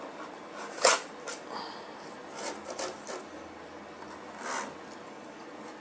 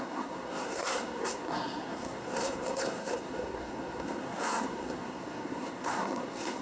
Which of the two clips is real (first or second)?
first